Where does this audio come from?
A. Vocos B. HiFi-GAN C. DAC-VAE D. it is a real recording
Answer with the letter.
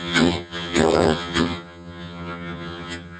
B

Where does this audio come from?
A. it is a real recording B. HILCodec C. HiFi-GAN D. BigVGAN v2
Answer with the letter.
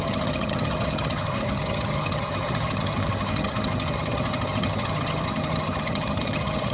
C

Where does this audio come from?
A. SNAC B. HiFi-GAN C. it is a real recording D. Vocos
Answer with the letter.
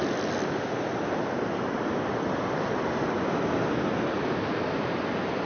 C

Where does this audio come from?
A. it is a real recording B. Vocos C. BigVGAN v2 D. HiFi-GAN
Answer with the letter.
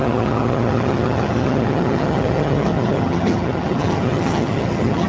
D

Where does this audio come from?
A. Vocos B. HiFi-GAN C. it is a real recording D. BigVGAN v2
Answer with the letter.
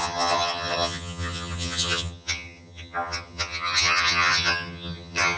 B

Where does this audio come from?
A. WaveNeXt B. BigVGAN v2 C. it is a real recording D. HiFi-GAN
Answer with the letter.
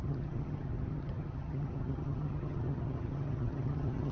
D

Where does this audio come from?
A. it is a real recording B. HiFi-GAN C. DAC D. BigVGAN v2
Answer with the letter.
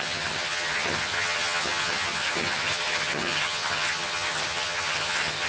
B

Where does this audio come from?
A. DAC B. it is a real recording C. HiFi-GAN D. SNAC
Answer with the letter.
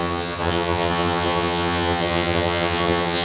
C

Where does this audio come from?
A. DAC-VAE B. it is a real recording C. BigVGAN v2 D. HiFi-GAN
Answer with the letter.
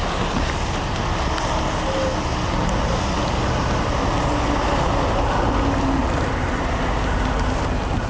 B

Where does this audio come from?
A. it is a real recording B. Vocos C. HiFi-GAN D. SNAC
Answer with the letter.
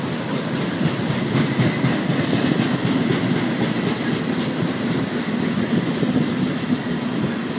A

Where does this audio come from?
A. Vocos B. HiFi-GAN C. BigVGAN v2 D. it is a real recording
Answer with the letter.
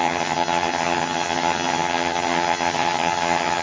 B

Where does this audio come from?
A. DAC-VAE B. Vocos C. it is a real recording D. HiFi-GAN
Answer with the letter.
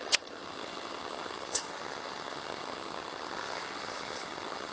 D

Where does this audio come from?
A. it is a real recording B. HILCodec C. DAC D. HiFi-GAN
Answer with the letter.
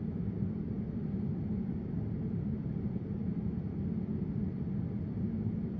A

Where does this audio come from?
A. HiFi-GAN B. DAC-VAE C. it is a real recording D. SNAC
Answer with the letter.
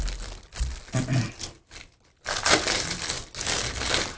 C